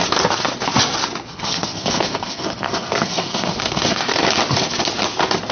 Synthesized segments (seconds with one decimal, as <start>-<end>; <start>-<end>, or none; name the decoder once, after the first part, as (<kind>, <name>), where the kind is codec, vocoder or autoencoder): 1.3-4.2 (codec, SNAC)